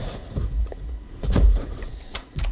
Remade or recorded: remade